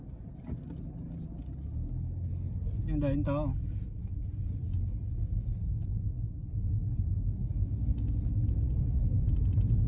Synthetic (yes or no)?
no